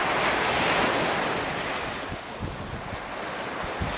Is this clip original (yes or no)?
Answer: yes